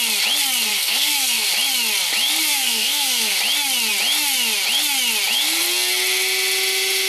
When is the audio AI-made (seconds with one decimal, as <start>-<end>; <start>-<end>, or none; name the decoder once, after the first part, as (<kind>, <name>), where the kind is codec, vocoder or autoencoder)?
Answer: 0.7-1.5 (codec, SNAC); 2.5-3.4